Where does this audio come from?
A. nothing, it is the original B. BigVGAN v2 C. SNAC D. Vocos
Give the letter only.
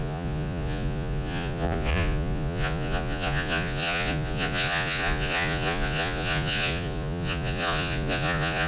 D